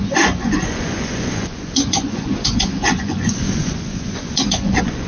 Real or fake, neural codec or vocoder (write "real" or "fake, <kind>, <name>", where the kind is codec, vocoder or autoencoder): fake, vocoder, Vocos